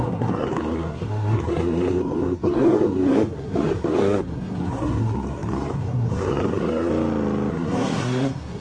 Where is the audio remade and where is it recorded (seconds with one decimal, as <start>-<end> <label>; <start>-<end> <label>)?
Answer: 0.0-6.9 remade; 6.9-7.5 recorded; 7.5-8.6 remade